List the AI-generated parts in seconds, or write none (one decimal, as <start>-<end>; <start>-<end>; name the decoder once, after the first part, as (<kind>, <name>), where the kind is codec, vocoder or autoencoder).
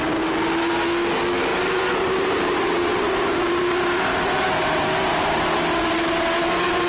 1.5-5.6 (vocoder, BigVGAN v2)